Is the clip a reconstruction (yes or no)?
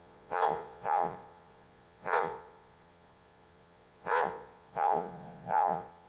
yes